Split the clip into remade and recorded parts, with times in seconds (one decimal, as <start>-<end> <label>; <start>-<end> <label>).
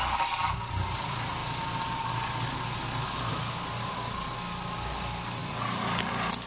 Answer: 0.0-6.5 recorded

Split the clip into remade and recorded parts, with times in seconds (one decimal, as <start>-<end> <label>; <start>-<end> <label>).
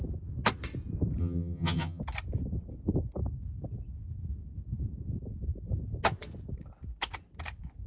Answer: 0.0-1.2 recorded; 1.2-2.0 remade; 2.0-7.9 recorded